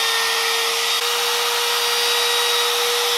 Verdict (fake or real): real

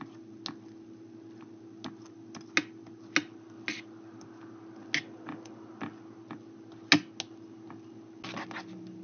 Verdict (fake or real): real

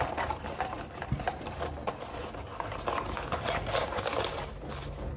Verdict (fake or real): real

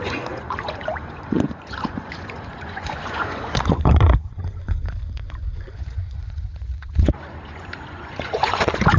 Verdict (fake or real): fake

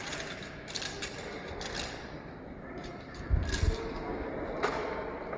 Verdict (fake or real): fake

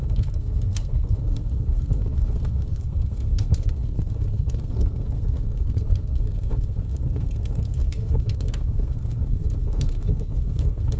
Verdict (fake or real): fake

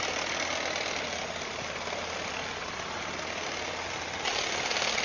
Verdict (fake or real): real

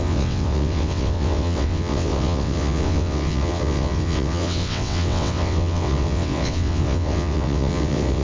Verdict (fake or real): fake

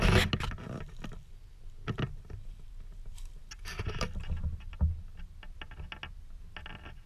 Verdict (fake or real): real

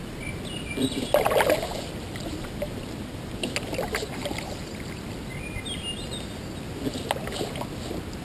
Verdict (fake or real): real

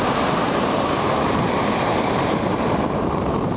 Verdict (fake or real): fake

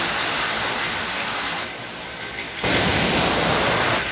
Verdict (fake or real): real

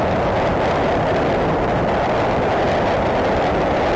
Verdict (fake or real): real